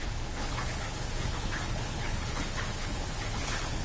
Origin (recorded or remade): remade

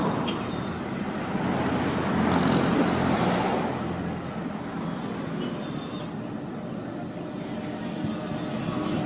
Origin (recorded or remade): recorded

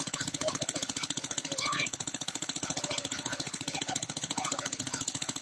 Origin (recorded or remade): remade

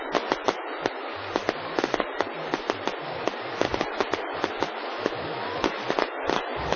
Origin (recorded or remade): recorded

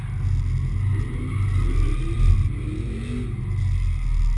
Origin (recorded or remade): recorded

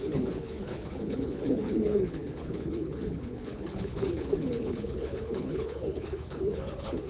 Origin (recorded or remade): remade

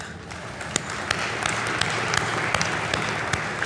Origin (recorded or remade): recorded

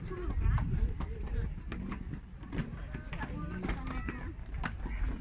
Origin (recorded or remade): recorded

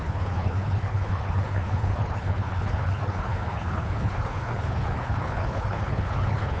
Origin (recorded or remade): remade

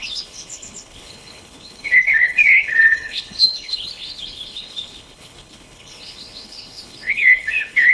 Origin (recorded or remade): remade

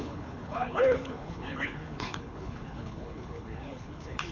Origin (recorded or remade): remade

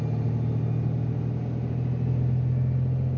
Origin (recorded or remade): recorded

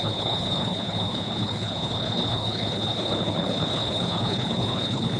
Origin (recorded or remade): remade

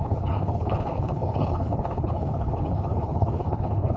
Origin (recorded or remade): remade